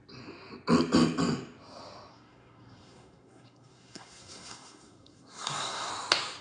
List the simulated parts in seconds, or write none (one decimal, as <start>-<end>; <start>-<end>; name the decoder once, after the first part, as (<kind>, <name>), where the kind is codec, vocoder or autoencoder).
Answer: 2.1-5.9 (codec, SNAC)